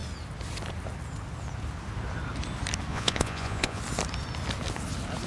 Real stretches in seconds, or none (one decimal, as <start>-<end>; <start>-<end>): 0.0-2.9; 3.8-5.3